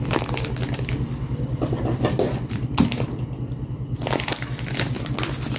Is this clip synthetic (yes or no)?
no